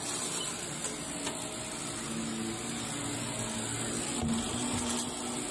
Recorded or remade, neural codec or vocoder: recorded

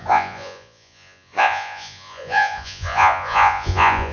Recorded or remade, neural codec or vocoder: remade, vocoder, Vocos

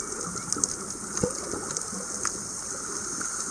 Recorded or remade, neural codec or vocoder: recorded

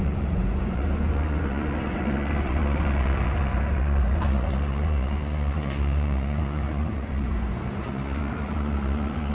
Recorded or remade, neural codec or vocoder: remade, vocoder, Vocos